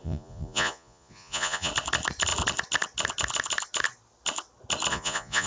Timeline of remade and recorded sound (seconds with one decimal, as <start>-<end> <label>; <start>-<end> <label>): 0.0-1.7 remade; 1.7-4.9 recorded; 4.9-5.5 remade